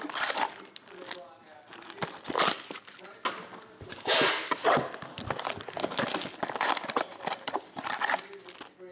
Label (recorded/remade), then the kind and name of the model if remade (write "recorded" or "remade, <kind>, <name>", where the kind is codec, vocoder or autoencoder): recorded